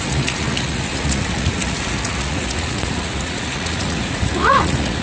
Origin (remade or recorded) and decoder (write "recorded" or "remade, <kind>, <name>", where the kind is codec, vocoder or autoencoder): remade, vocoder, Vocos